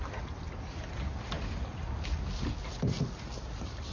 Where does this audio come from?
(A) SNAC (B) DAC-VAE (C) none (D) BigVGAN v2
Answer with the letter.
C